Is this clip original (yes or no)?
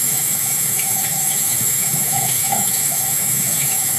no